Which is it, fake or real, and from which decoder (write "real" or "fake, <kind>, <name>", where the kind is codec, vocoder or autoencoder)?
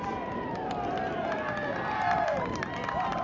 real